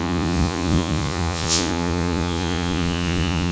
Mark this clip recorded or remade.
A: remade